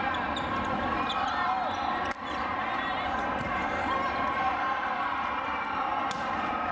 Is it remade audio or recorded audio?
recorded